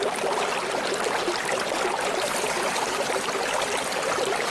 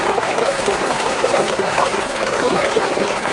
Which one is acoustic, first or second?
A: first